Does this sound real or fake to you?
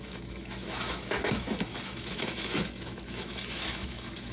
fake